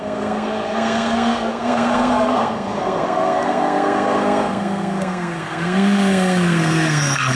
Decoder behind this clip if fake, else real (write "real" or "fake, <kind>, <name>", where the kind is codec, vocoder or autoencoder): fake, codec, SNAC